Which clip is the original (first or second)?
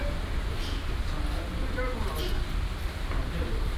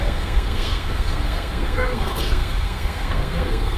first